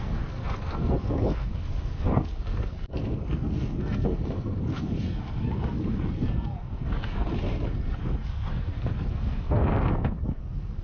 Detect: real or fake fake